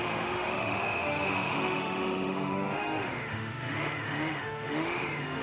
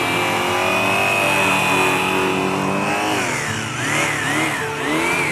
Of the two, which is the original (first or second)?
second